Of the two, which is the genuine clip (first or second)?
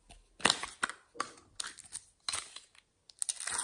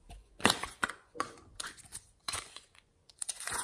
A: first